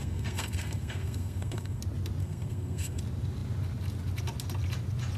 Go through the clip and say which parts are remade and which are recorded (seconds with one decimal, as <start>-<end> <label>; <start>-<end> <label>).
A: 0.0-1.8 remade; 1.8-2.2 recorded; 2.2-3.0 remade; 3.0-5.2 recorded